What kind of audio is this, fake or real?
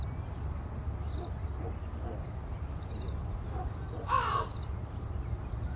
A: real